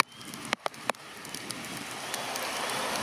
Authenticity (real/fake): real